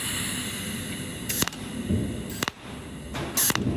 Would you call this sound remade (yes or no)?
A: no